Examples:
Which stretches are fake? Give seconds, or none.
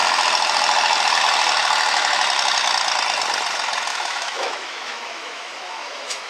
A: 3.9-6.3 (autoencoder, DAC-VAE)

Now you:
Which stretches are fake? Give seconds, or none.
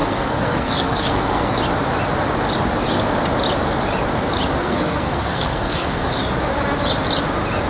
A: 0.0-1.6 (codec, SNAC); 4.6-6.1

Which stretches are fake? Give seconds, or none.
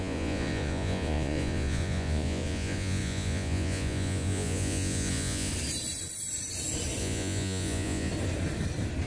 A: 0.0-5.5 (vocoder, Vocos); 7.0-8.1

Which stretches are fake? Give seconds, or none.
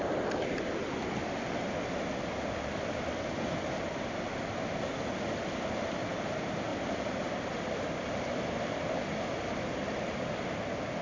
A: 6.7-8.3 (vocoder, BigVGAN v2)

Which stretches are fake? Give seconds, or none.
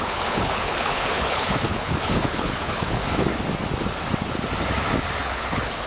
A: 0.0-3.0 (codec, HILCodec); 5.2-5.9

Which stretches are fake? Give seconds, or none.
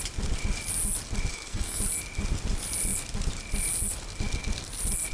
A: 1.3-1.8 (codec, SNAC)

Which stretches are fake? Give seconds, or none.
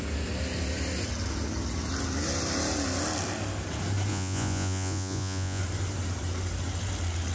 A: 4.1-5.6 (vocoder, Vocos)